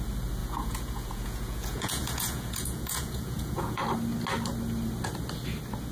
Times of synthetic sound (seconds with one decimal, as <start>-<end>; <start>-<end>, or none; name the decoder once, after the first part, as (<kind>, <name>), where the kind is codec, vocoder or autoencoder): 0.4-3.8 (vocoder, Vocos)